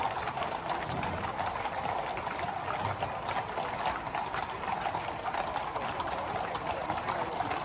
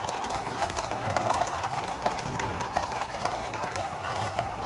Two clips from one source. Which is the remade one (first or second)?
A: second